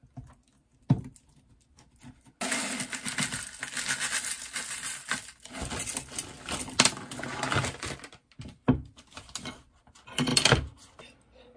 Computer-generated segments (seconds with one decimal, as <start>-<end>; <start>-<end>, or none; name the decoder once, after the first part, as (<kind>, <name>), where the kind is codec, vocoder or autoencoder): none